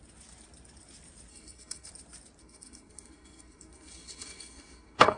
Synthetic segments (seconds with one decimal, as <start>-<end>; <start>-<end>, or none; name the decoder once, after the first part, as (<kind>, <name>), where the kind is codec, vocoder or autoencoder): 1.3-1.9 (codec, SNAC); 2.4-5.2